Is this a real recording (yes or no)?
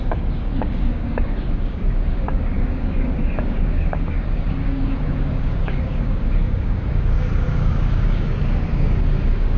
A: no